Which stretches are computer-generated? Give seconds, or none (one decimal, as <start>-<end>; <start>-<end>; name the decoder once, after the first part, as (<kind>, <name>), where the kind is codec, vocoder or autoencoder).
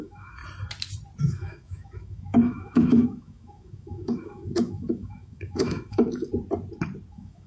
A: 0.0-0.4 (autoencoder, DAC-VAE); 1.2-6.3; 7.1-7.5